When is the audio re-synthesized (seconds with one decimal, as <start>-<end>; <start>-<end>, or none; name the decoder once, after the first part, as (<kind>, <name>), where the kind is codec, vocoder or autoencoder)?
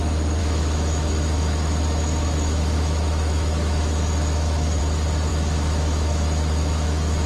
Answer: 0.4-4.8 (autoencoder, DAC-VAE); 5.3-7.3